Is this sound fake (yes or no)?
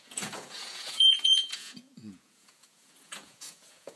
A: yes